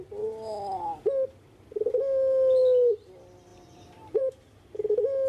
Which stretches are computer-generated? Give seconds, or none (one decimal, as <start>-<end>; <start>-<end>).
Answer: none